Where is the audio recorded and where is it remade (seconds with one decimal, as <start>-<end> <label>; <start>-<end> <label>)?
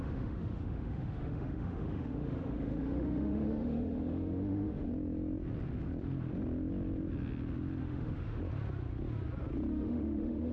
0.0-4.9 remade; 4.9-7.8 recorded; 7.8-8.4 remade; 8.4-9.7 recorded; 9.7-10.5 remade